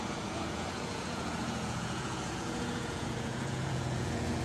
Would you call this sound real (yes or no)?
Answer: no